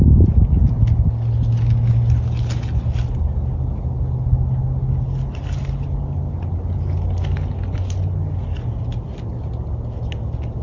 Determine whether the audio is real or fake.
real